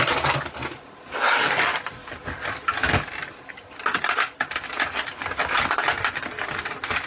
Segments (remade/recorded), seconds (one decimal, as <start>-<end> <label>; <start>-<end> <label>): 0.0-7.1 recorded